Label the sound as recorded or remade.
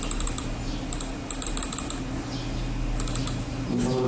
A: recorded